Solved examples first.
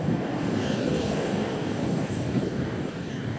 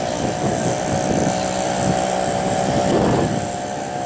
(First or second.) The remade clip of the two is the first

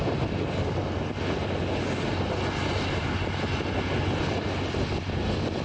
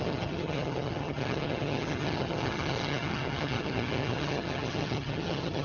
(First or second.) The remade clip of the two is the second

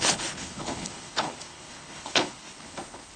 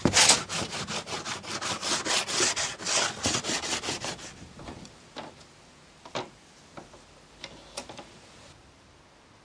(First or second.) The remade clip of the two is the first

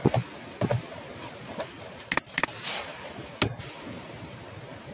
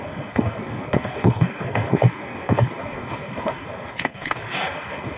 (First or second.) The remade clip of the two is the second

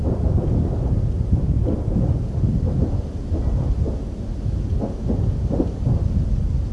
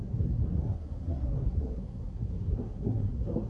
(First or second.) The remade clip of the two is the second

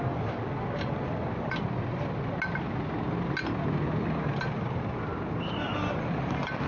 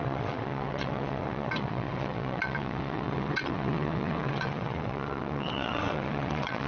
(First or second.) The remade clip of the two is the second